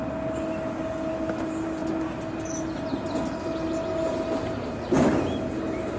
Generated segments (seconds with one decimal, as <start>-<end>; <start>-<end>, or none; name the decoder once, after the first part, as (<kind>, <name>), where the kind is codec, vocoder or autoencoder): none